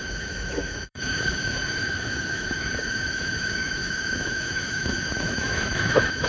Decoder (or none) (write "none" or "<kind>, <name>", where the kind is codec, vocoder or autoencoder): autoencoder, DAC-VAE